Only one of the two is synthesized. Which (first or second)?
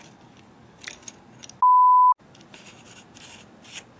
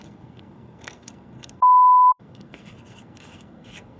second